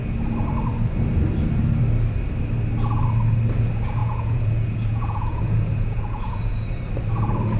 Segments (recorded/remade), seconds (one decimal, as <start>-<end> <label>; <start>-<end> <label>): 0.0-4.0 recorded; 4.0-6.8 remade; 6.8-7.6 recorded

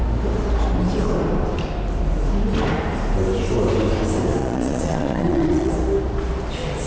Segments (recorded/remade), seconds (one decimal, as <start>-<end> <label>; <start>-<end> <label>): 0.0-4.4 recorded; 4.4-5.7 remade; 5.7-6.9 recorded

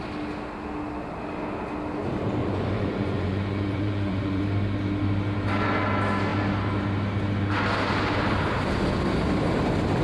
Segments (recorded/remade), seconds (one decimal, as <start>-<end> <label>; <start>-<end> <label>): 0.0-2.4 recorded; 2.4-4.4 remade; 4.4-10.0 recorded

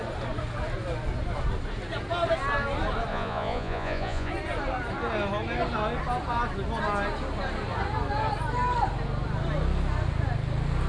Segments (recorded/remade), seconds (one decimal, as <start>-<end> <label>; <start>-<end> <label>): 0.0-3.1 recorded; 3.1-4.3 remade; 4.3-10.9 recorded

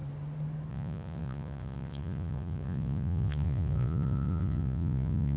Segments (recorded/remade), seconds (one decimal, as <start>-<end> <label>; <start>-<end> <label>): 0.0-0.7 recorded; 0.7-5.4 remade

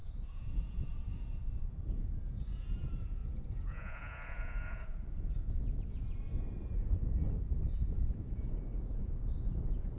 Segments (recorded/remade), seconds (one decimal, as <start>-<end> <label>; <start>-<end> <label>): 0.0-10.0 remade